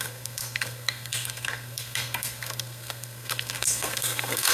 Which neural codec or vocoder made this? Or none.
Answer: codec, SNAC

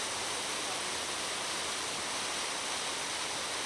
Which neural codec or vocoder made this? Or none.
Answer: none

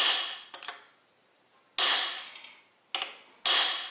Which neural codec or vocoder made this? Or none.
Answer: none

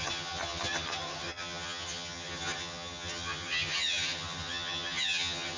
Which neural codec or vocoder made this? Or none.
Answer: vocoder, HiFi-GAN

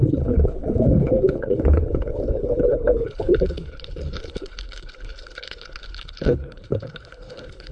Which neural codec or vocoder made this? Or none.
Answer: codec, HILCodec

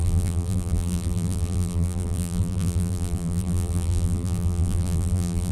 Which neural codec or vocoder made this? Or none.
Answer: vocoder, BigVGAN v2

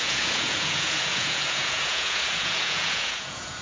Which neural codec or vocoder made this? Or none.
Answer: vocoder, Vocos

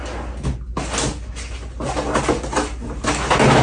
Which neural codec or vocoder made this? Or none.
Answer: none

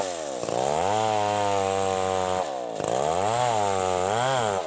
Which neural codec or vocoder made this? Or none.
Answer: none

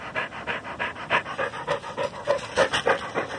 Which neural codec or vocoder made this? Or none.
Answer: none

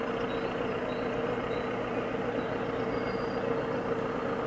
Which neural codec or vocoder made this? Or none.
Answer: none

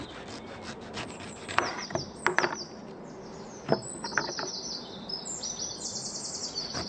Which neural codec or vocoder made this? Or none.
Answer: none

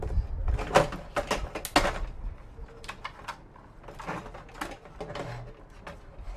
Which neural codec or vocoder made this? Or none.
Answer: none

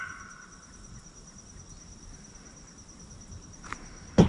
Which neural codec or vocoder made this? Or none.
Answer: none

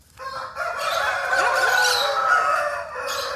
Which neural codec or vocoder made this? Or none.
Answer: none